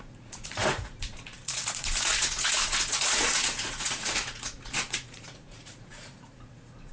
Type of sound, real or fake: fake